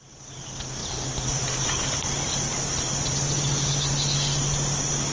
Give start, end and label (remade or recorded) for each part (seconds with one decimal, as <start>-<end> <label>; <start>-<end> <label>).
0.0-5.1 recorded